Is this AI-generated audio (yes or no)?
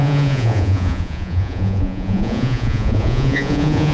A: yes